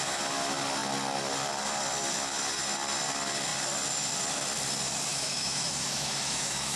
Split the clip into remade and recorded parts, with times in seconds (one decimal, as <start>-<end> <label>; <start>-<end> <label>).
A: 0.0-5.1 recorded; 5.1-6.8 remade